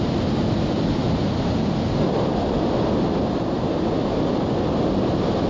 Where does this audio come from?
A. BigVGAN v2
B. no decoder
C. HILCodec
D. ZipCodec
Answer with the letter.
B